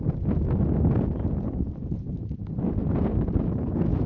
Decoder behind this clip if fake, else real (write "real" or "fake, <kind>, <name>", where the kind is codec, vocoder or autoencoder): real